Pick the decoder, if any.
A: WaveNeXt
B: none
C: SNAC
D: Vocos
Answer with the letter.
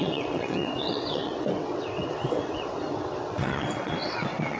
A